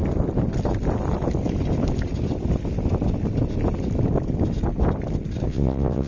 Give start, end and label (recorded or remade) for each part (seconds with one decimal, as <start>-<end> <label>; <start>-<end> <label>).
0.0-5.5 recorded; 5.5-6.1 remade